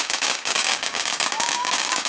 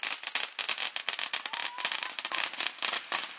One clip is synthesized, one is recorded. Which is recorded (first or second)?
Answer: second